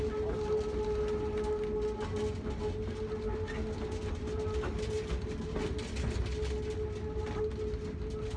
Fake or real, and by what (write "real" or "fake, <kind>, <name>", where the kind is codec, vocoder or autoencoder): real